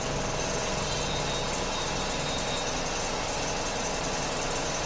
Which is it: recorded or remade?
recorded